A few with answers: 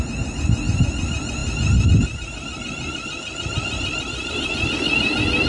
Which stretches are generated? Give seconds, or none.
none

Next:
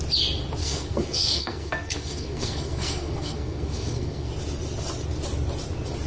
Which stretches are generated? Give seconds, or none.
0.6-4.3 (codec, SNAC)

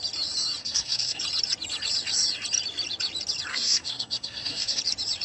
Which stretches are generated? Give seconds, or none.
0.6-1.2 (codec, SNAC); 3.5-4.8

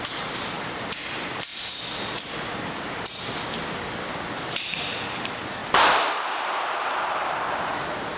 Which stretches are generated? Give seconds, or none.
0.0-1.5 (vocoder, BigVGAN v2); 4.6-8.2

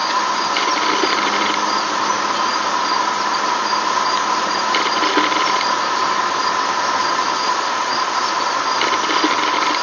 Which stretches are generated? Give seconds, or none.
0.0-0.7 (vocoder, Vocos)

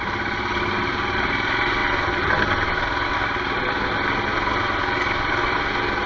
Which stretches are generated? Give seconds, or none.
none

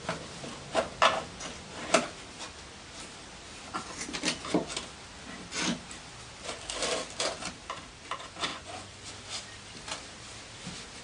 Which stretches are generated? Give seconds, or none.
8.5-9.1 (vocoder, Vocos)